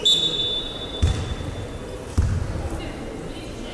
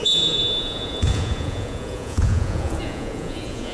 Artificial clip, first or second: second